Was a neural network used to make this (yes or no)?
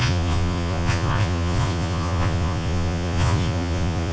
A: yes